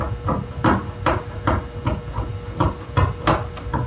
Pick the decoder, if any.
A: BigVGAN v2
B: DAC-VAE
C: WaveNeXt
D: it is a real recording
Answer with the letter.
D